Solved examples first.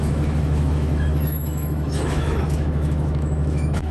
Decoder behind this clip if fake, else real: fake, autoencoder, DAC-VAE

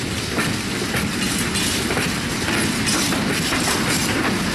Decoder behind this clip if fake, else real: real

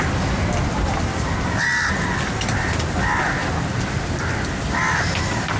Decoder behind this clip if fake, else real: real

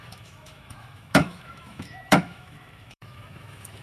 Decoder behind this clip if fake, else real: fake, autoencoder, DAC-VAE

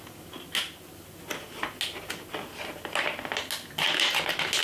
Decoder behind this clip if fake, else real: real